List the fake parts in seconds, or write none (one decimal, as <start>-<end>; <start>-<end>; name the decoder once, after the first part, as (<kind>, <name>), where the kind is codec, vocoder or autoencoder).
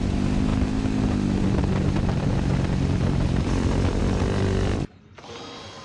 none